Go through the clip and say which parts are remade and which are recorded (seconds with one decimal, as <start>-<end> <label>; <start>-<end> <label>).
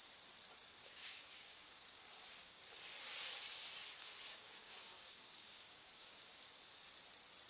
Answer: 0.0-0.8 recorded; 0.8-2.6 remade; 2.6-4.3 recorded; 4.3-6.4 remade; 6.4-7.5 recorded